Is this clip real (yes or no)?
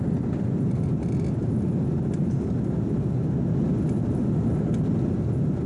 yes